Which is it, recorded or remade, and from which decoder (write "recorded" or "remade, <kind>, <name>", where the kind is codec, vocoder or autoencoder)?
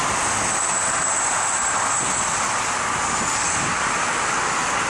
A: recorded